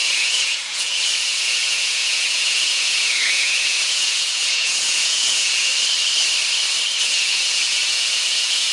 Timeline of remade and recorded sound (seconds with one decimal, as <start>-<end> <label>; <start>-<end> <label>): 0.0-5.7 remade; 5.7-7.0 recorded; 7.0-8.7 remade